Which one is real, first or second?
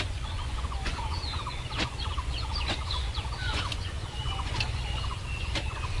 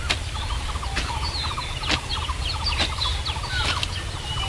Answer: second